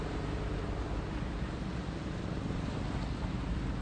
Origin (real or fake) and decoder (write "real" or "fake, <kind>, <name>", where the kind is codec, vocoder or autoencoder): real